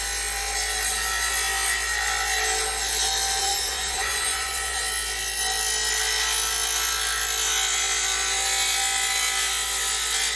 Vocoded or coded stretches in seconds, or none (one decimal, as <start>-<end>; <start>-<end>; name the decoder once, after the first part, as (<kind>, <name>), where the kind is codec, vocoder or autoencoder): 3.4-4.8 (vocoder, Vocos)